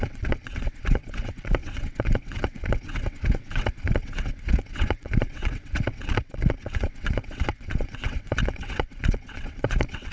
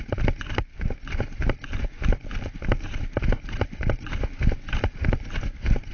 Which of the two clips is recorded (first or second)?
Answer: second